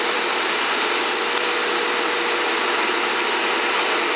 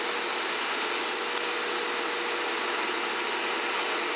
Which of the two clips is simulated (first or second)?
first